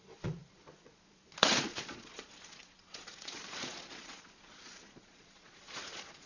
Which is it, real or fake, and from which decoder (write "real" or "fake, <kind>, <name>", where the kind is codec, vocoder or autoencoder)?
fake, vocoder, Vocos